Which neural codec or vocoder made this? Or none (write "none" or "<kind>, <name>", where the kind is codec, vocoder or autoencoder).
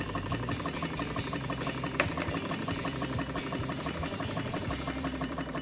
vocoder, BigVGAN v2